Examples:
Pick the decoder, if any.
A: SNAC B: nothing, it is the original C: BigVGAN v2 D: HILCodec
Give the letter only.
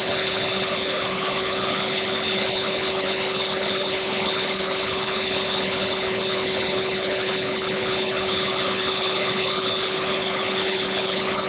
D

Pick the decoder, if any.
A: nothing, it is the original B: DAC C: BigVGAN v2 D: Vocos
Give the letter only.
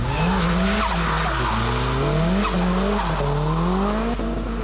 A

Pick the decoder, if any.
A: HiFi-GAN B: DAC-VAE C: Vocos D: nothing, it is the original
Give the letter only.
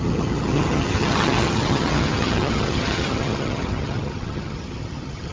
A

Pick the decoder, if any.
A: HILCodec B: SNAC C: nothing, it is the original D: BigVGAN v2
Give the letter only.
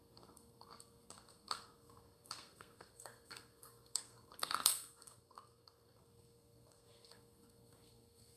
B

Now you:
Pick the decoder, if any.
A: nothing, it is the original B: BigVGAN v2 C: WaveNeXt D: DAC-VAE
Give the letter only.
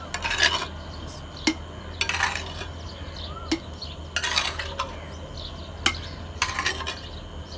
A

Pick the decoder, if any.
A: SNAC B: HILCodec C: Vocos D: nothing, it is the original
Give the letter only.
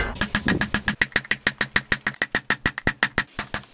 D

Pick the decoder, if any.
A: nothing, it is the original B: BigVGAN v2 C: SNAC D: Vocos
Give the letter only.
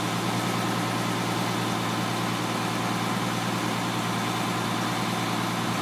A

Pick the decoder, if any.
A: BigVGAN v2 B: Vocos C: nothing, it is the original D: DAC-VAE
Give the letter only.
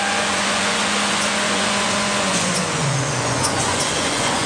B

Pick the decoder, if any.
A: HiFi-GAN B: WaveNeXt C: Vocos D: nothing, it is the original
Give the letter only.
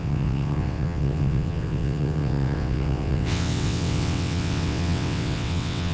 B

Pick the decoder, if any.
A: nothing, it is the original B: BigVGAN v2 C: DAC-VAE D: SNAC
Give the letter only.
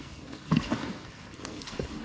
D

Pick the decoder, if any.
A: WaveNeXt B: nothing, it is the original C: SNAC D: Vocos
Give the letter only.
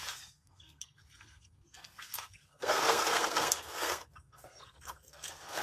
C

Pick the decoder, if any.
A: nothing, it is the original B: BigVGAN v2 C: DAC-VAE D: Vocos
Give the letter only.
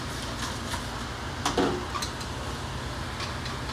A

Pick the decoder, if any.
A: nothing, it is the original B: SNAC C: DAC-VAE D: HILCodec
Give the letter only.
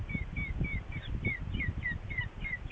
A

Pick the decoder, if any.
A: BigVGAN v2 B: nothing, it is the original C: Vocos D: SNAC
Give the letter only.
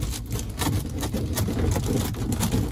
B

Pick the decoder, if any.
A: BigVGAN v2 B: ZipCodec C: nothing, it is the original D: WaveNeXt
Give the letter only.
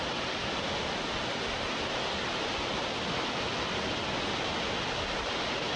C